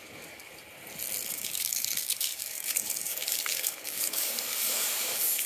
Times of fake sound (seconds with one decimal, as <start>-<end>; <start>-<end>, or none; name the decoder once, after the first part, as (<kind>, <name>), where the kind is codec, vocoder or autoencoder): 0.0-0.5 (codec, DAC); 1.3-5.5

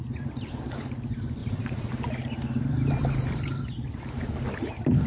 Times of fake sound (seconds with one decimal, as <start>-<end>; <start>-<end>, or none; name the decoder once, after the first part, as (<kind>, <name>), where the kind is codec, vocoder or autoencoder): 1.4-1.9 (vocoder, Vocos)